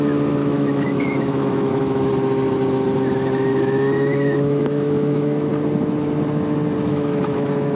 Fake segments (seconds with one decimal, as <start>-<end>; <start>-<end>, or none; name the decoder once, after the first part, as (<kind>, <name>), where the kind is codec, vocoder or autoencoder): 0.4-2.1 (autoencoder, DAC-VAE); 3.5-5.5; 6.9-7.8